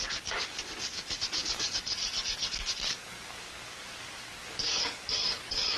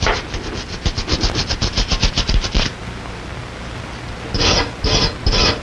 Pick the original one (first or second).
second